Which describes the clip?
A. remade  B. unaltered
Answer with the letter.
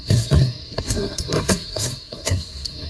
A